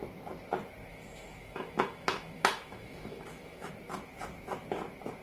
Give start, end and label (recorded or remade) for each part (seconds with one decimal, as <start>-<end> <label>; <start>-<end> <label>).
0.0-0.9 recorded; 0.9-3.7 remade; 3.7-5.2 recorded